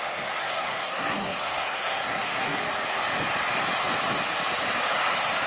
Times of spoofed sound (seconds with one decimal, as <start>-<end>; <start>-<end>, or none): 0.4-2.6